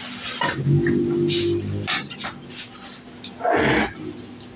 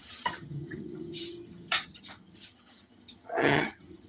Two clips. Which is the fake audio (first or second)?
second